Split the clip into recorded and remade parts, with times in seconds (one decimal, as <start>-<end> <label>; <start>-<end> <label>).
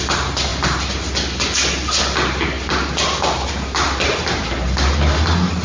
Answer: 0.0-5.6 recorded